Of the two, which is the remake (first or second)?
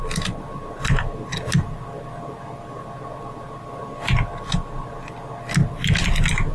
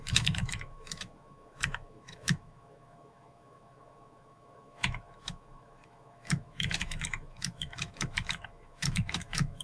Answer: second